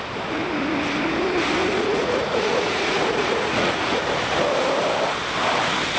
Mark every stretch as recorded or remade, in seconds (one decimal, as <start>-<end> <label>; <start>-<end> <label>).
0.0-1.6 recorded; 1.6-4.1 remade; 4.1-6.0 recorded